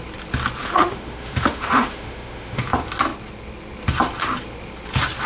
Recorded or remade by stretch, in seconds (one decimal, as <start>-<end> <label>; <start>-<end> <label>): 0.0-0.6 recorded; 0.6-2.6 remade; 2.6-5.3 recorded